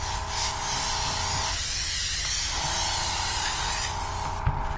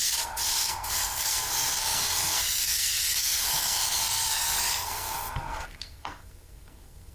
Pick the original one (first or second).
first